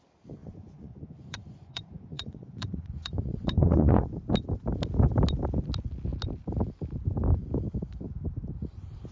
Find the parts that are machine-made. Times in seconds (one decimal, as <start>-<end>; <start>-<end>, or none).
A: 0.4-4.1